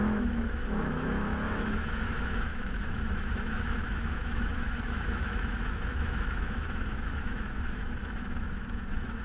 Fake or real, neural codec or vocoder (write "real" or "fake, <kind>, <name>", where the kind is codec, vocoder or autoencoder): fake, autoencoder, DAC-VAE